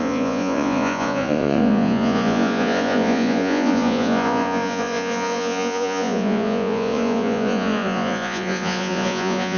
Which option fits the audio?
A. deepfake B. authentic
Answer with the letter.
A